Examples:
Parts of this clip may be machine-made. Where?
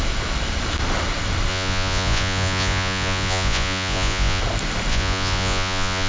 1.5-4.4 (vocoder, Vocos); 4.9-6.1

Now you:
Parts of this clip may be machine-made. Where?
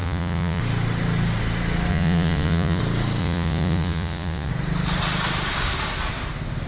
0.0-0.6 (vocoder, Vocos); 1.9-2.8; 3.2-4.5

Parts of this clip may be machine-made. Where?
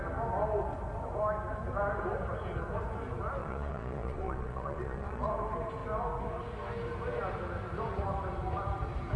3.4-5.3 (vocoder, Vocos)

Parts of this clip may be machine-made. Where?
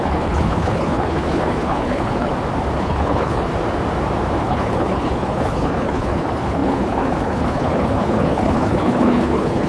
0.0-2.3 (codec, HILCodec); 2.8-3.5; 4.4-9.7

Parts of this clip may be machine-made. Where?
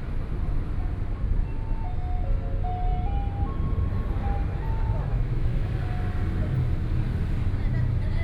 5.1-5.7 (autoencoder, DAC-VAE)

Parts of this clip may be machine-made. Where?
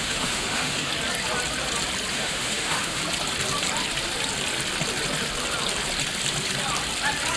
0.0-0.9 (autoencoder, DAC-VAE); 2.1-3.0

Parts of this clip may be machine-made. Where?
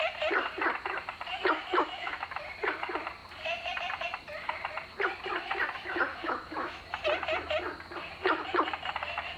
1.8-2.4 (autoencoder, DAC-VAE); 6.1-6.8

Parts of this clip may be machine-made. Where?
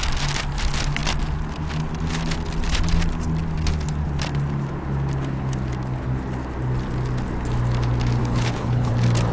8.2-8.9 (codec, HILCodec)